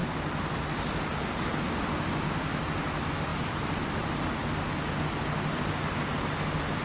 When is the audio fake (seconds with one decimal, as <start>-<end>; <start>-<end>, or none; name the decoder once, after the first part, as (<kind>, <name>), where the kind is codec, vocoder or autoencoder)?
none

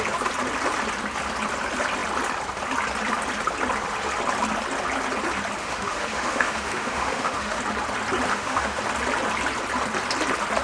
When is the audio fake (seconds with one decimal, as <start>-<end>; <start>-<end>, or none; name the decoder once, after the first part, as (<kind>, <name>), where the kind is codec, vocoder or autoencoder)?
5.6-7.6 (autoencoder, DAC-VAE); 8.3-8.8

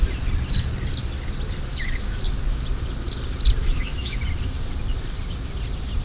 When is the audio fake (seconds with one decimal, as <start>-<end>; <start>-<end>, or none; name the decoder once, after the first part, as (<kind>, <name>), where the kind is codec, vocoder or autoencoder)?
1.7-2.2 (autoencoder, DAC-VAE); 3.6-4.2

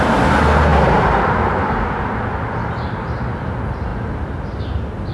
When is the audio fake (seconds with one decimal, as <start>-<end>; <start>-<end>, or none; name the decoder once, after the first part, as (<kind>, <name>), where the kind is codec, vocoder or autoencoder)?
none

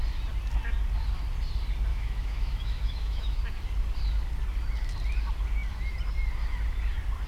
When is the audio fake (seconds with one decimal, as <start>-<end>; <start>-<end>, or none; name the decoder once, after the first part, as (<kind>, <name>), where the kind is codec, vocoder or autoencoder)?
1.9-3.4 (autoencoder, DAC-VAE)